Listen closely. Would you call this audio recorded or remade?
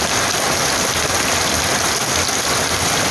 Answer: recorded